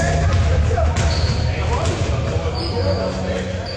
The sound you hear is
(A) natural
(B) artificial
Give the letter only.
A